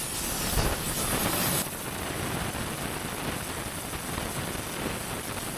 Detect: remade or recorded recorded